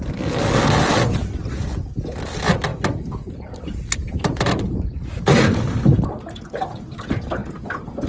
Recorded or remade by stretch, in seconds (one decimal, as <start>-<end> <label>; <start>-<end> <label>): 0.0-2.7 recorded; 2.7-7.0 remade; 7.0-8.1 recorded